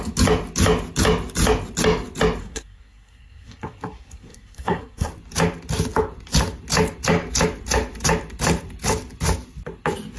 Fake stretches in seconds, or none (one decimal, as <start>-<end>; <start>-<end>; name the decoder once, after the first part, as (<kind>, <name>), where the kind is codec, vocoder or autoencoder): 2.4-5.1 (codec, SNAC)